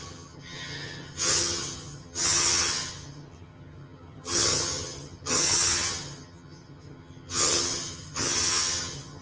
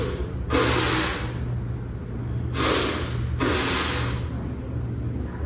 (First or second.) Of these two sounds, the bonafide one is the second